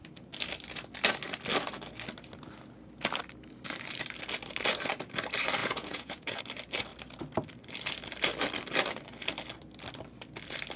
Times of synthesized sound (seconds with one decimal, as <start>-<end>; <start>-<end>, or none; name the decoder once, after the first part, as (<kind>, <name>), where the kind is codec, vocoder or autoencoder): 5.6-6.4 (vocoder, Vocos)